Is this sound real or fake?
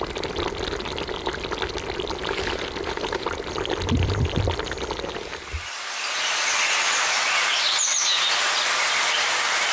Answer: real